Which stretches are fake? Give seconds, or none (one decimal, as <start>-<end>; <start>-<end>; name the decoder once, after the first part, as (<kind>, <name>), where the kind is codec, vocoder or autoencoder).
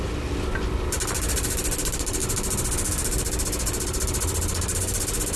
none